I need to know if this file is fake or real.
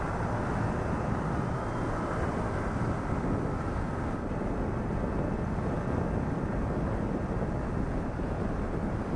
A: real